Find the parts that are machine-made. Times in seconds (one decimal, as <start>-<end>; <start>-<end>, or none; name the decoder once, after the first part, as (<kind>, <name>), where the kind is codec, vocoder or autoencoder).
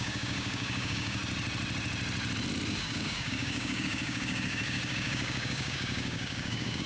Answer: 0.0-1.2 (codec, DAC); 2.7-6.9